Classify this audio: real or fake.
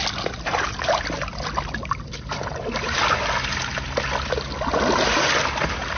real